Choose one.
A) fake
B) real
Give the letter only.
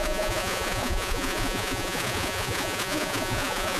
A